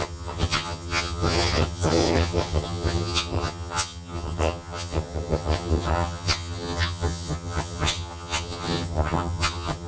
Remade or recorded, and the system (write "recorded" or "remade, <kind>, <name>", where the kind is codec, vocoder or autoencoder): remade, vocoder, HiFi-GAN